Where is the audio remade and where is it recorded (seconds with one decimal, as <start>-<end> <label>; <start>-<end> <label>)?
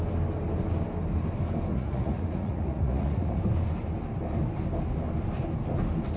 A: 0.0-1.7 recorded; 1.7-3.4 remade; 3.4-6.2 recorded